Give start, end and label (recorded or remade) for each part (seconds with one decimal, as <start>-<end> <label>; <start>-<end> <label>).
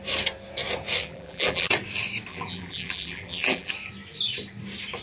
0.0-1.0 recorded; 1.0-1.7 remade; 1.7-2.3 recorded; 2.3-3.7 remade; 3.7-5.0 recorded